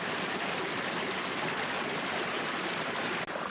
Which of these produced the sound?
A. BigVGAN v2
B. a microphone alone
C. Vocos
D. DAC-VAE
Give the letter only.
B